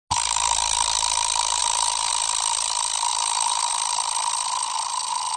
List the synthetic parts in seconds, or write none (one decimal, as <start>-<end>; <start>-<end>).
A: 1.6-2.1; 3.1-3.7